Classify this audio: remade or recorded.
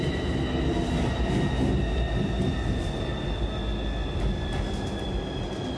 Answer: recorded